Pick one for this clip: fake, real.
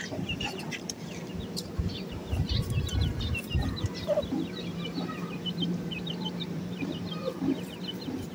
fake